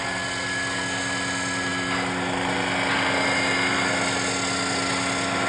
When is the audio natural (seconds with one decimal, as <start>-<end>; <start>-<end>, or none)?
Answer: 0.0-5.5